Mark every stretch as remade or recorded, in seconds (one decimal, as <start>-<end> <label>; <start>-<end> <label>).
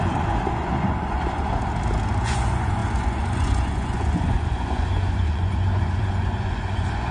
0.0-1.7 remade; 1.7-2.2 recorded; 2.2-7.1 remade